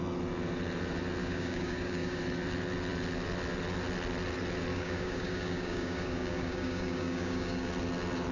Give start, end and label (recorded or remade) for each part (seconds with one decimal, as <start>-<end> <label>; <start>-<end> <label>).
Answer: 0.0-1.2 recorded; 1.2-2.2 remade; 2.2-4.7 recorded; 4.7-7.7 remade; 7.7-8.3 recorded